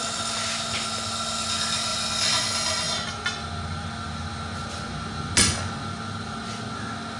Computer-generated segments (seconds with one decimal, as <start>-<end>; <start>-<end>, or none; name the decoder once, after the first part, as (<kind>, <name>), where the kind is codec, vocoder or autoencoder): none